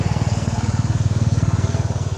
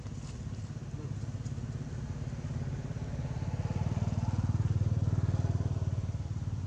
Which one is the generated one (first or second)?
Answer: first